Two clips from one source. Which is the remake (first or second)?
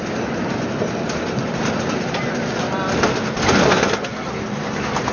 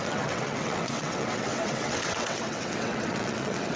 second